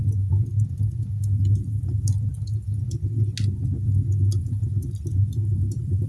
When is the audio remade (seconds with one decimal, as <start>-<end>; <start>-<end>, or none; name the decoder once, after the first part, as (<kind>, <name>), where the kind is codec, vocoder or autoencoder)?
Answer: 1.4-2.1 (vocoder, BigVGAN v2); 4.4-6.1

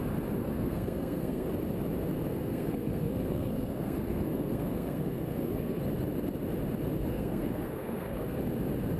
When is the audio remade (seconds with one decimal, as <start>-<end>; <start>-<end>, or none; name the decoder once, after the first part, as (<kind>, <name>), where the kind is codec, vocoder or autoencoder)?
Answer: 0.4-1.5 (codec, SNAC); 2.3-5.8; 7.1-8.4

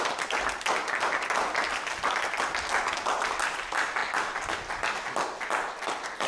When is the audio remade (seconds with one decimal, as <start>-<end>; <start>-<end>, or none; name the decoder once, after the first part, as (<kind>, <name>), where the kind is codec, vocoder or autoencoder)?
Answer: none

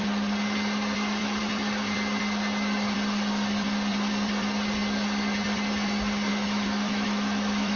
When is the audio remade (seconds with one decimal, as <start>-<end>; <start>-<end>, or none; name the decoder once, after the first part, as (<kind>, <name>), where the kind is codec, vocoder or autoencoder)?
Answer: 6.3-7.8 (autoencoder, DAC-VAE)

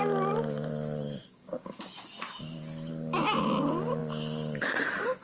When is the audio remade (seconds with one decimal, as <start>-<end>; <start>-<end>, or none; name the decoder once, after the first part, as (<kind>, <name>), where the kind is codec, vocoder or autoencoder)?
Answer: 1.2-1.8 (codec, DAC)